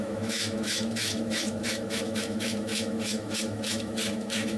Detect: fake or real fake